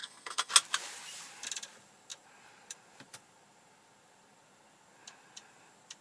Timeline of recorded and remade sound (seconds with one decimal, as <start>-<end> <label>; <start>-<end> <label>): 0.0-0.5 remade; 0.5-6.0 recorded